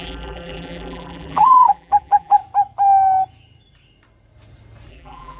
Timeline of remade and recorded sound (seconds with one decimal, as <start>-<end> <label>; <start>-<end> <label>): 0.0-2.4 remade; 2.4-4.9 recorded; 4.9-5.4 remade